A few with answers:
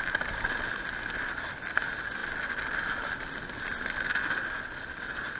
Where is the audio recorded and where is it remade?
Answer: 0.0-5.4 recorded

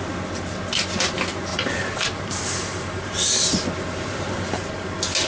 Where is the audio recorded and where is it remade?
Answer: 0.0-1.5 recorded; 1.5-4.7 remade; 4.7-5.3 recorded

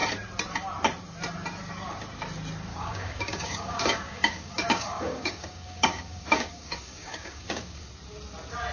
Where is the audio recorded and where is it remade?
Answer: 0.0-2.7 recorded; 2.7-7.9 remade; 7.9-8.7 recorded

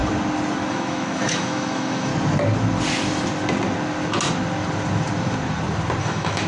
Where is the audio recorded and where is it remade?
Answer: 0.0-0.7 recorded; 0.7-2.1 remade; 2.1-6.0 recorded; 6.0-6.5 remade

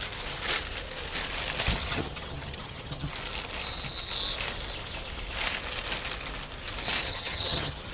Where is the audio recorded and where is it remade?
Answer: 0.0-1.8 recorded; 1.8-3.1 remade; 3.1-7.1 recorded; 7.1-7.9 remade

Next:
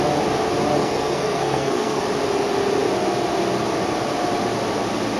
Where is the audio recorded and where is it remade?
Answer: 0.0-0.8 recorded; 0.8-2.0 remade; 2.0-5.2 recorded

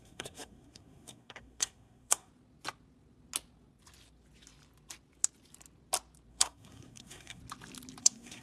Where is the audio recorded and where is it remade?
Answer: 0.0-2.3 remade; 2.3-6.3 recorded; 6.3-7.4 remade; 7.4-8.0 recorded; 8.0-8.4 remade